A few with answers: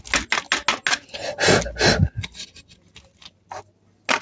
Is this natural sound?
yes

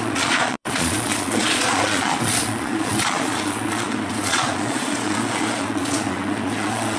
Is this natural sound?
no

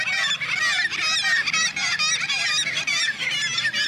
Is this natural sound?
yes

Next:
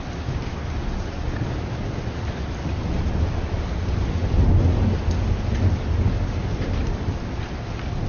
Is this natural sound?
yes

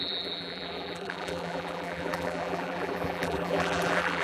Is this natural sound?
no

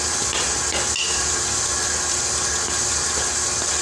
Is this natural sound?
yes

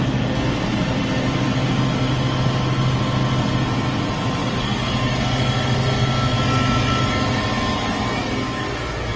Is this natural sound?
yes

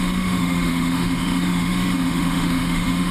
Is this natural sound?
no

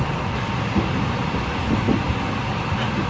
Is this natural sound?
yes